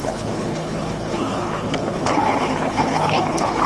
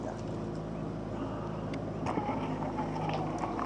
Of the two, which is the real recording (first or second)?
second